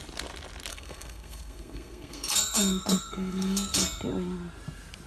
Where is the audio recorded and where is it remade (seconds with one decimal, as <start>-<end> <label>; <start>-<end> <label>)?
0.0-0.7 recorded; 0.7-3.8 remade; 3.8-5.1 recorded